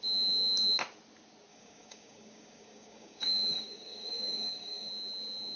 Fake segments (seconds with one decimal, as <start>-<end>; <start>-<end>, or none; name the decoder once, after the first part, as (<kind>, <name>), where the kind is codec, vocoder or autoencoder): 1.5-4.9 (codec, DAC)